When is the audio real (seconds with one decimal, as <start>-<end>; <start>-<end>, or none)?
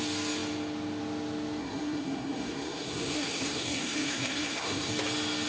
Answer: 0.0-1.6; 4.9-5.5